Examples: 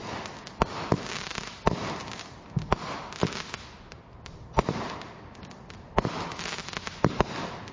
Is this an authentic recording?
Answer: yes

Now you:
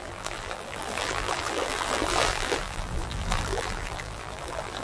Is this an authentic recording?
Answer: no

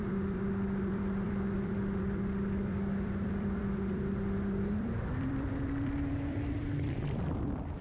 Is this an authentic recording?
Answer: no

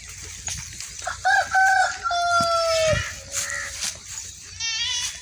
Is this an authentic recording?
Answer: yes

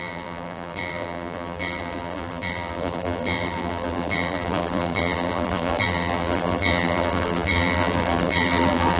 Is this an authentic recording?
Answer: no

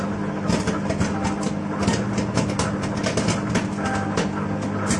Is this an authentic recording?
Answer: yes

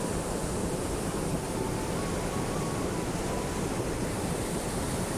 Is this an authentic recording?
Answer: yes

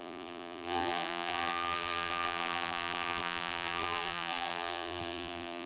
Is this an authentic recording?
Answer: no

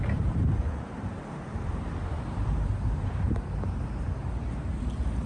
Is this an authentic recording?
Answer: no